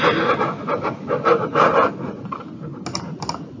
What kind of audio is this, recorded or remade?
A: recorded